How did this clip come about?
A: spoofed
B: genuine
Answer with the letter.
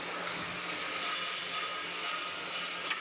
B